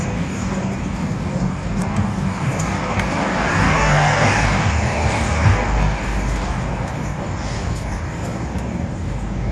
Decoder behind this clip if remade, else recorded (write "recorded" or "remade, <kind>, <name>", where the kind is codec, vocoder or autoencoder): remade, codec, DAC